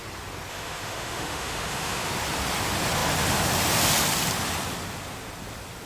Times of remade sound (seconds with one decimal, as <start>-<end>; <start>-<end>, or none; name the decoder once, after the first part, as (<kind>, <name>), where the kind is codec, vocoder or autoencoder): 0.5-2.1 (autoencoder, DAC-VAE)